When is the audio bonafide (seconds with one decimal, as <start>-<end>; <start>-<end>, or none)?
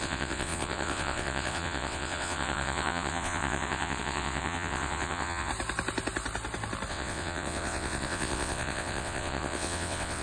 5.5-6.9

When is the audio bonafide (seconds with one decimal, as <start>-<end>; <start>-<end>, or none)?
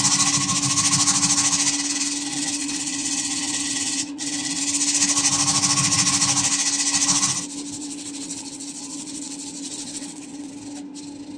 0.0-2.3; 4.6-7.8; 10.5-11.4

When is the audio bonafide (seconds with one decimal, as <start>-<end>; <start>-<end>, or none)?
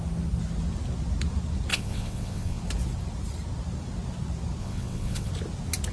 0.0-1.7; 2.6-4.6; 5.3-5.9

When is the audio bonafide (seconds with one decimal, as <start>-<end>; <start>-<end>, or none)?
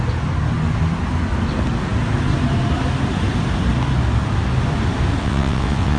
0.0-5.2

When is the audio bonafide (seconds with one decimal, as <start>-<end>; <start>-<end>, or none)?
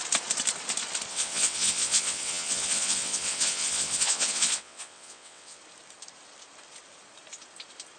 0.0-1.1; 5.6-8.0